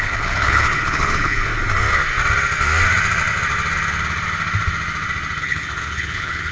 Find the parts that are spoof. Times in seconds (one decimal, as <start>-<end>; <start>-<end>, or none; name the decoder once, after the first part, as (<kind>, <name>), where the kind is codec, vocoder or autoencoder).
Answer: 0.0-1.5 (codec, HILCodec); 5.4-6.5